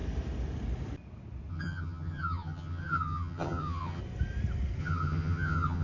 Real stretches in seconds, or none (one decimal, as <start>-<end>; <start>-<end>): 0.0-1.5; 4.0-4.8